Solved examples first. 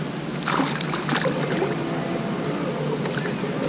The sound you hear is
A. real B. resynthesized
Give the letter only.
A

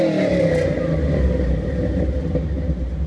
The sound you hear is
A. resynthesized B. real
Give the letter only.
B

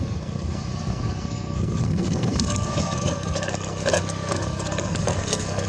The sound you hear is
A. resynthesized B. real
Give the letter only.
A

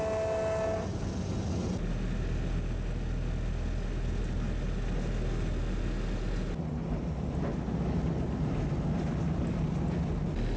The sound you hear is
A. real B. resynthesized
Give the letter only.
A